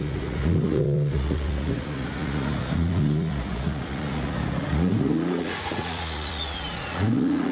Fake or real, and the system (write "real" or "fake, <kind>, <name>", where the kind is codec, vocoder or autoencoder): fake, vocoder, Vocos